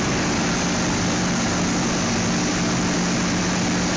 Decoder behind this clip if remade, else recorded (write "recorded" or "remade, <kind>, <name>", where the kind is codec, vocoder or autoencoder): recorded